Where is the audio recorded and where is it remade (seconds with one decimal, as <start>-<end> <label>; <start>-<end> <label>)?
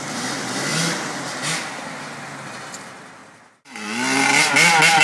0.0-5.0 recorded